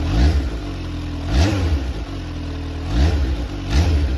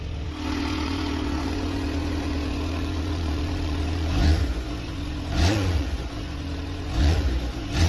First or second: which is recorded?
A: first